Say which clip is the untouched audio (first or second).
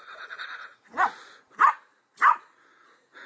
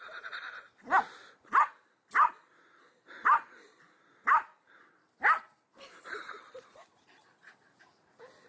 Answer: second